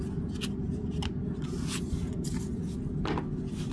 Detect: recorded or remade recorded